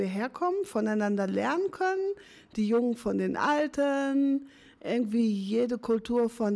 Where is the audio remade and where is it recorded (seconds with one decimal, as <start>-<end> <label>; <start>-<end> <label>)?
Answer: 0.0-6.6 recorded